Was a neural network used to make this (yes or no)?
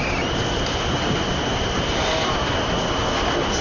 no